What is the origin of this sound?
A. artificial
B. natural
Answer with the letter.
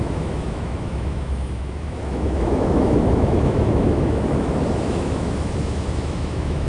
A